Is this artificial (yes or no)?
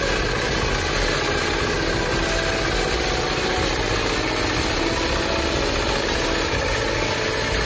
no